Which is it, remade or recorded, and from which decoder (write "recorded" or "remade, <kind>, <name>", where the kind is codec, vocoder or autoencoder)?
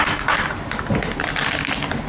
remade, vocoder, BigVGAN v2